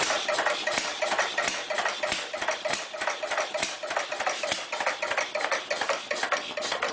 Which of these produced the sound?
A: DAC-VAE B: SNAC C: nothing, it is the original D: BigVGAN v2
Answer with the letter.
C